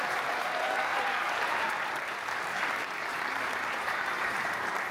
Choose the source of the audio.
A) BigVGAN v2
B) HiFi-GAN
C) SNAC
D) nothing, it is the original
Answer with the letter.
A